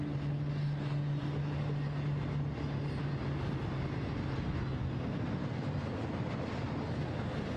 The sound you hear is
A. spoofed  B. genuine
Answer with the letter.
B